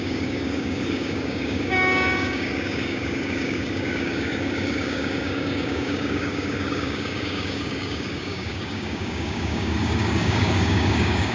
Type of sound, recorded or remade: remade